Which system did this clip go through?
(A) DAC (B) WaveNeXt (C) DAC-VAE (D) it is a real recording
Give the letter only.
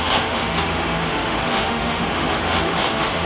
C